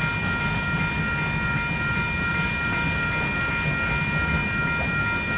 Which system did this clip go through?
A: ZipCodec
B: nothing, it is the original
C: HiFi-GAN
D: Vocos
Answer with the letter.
B